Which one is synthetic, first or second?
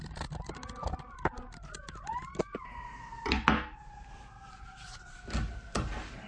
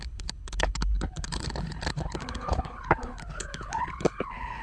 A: second